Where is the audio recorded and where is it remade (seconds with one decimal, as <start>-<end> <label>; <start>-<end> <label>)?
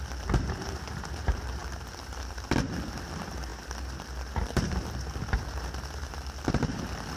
0.0-7.2 remade